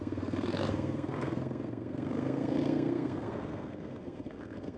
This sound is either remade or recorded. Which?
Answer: remade